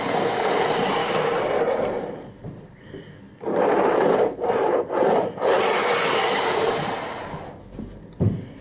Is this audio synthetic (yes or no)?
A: no